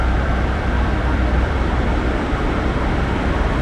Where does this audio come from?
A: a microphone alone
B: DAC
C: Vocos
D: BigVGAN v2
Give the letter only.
D